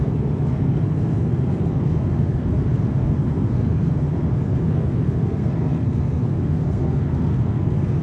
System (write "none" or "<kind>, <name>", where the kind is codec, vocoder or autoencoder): codec, SNAC